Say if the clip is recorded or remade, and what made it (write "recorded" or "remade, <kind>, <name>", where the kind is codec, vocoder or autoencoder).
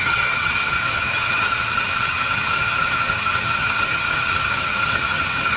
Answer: remade, vocoder, HiFi-GAN